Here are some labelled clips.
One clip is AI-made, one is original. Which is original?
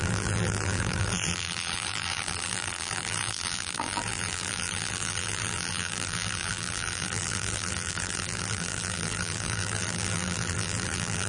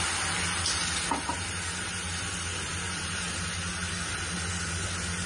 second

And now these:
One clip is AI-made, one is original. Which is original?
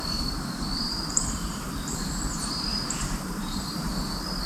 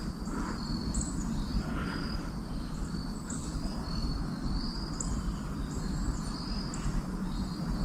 second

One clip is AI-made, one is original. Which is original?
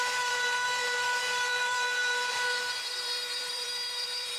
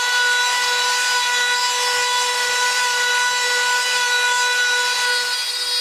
second